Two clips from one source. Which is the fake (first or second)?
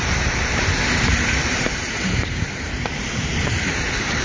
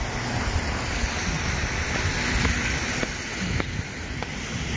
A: first